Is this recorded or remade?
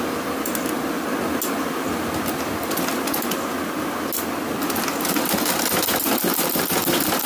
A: recorded